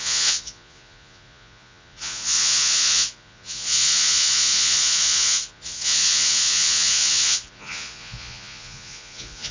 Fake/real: fake